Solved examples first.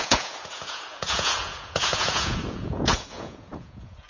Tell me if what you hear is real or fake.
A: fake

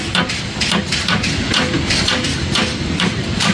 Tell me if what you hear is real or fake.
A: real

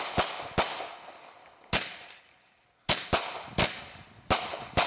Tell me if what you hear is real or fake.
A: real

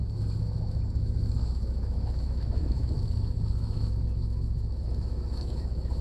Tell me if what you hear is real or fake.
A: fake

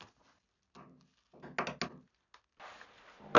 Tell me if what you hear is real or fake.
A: real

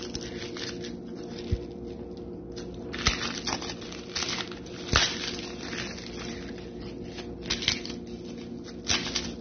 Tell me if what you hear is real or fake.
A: real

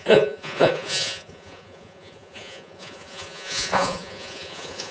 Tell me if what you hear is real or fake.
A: fake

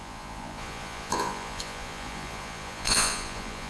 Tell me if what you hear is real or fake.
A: fake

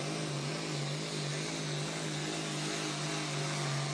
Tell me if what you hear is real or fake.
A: real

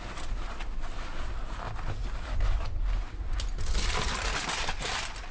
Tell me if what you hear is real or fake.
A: real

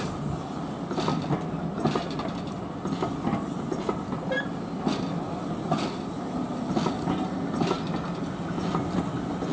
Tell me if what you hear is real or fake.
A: real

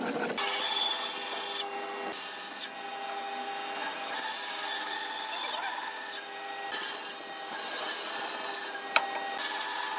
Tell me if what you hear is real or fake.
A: real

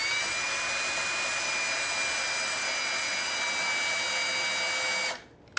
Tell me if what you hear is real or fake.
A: real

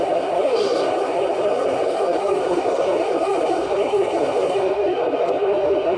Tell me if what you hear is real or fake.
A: fake